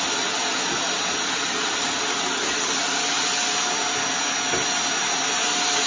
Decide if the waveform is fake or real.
real